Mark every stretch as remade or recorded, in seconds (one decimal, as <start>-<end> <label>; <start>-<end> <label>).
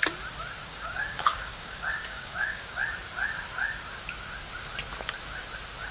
0.0-0.7 recorded; 0.7-2.8 remade; 2.8-5.9 recorded